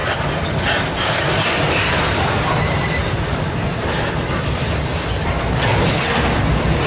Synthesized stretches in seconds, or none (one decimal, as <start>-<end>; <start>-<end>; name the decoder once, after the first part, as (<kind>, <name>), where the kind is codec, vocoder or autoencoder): 0.9-3.0 (vocoder, BigVGAN v2); 5.9-6.9